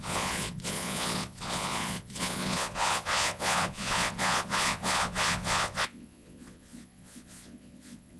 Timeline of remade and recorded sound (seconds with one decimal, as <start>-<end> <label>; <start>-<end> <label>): 0.0-8.2 remade